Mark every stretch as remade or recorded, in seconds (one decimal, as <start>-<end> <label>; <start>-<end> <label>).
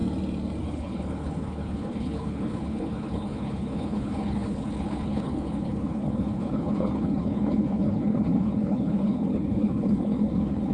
0.0-0.6 recorded; 0.6-10.7 remade